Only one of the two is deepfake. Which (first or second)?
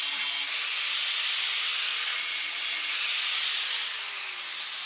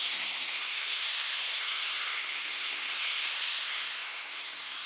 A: second